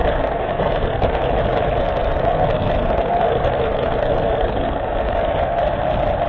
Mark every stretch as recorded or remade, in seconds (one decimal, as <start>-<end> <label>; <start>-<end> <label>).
0.0-1.3 remade; 1.3-1.8 recorded; 1.8-5.6 remade; 5.6-6.3 recorded